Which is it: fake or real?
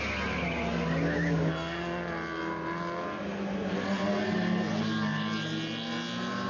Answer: real